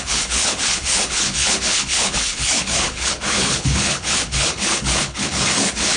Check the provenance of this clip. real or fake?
fake